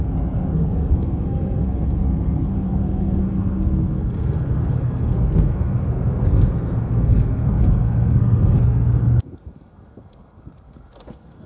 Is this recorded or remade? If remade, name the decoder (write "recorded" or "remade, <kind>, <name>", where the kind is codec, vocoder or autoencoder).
remade, codec, SNAC